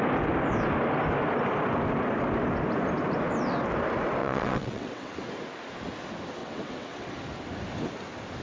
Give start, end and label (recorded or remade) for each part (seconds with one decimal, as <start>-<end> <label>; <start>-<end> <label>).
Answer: 0.0-4.2 recorded; 4.2-5.1 remade; 5.1-6.4 recorded; 6.4-7.1 remade; 7.1-8.4 recorded